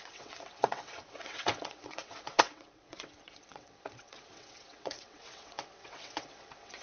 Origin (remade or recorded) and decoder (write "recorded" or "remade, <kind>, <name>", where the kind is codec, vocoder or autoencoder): remade, vocoder, WaveNeXt